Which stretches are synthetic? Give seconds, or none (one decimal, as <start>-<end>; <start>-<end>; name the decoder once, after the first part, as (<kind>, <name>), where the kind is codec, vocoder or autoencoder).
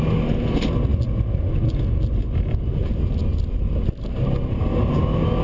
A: none